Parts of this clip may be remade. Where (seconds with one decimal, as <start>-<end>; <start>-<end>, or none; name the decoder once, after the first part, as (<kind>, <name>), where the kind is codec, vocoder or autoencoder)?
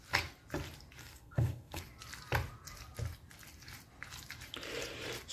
1.0-1.8 (codec, SNAC)